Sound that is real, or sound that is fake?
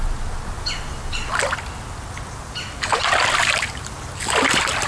real